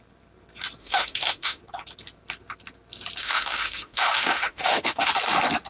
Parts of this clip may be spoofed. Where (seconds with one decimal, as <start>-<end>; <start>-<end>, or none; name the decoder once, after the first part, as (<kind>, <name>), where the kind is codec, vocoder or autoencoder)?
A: 0.8-1.6 (autoencoder, DAC-VAE); 3.2-5.1